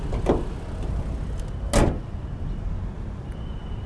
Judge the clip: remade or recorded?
recorded